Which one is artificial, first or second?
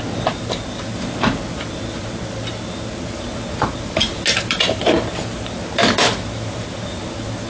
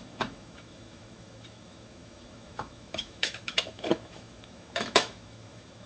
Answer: second